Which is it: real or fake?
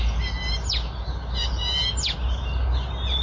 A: real